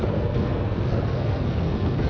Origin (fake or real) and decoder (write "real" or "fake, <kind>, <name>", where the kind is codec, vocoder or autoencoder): fake, codec, SNAC